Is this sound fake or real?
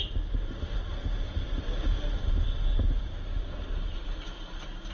real